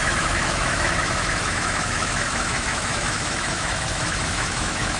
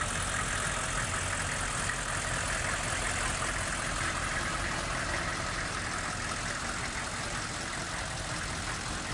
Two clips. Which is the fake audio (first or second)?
first